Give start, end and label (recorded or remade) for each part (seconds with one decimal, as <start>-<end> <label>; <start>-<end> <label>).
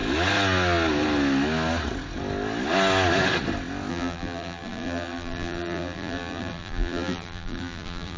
0.0-3.9 recorded; 3.9-8.2 remade